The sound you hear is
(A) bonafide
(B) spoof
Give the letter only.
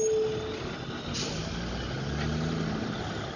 A